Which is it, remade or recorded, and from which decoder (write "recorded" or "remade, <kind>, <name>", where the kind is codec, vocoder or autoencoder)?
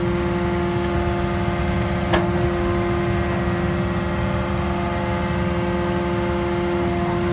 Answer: recorded